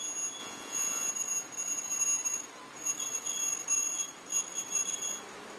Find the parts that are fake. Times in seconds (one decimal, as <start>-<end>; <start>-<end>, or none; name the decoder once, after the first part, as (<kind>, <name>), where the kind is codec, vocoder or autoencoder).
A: 0.4-1.1 (vocoder, Vocos)